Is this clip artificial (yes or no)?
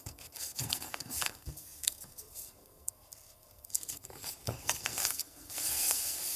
yes